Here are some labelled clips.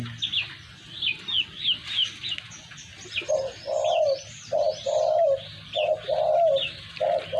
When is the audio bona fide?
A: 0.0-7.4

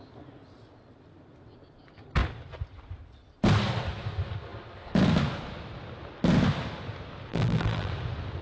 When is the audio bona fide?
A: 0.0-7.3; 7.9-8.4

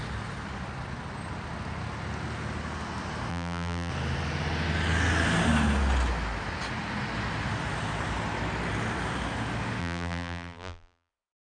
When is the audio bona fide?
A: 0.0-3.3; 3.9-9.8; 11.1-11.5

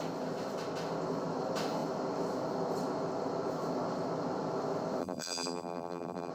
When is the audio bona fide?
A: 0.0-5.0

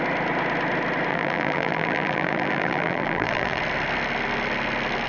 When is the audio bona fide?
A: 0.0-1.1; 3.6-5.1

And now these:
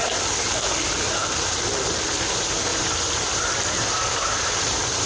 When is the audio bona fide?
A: 0.0-2.7

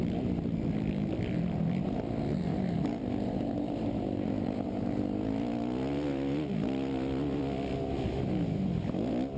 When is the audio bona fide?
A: 0.0-2.5; 5.0-9.4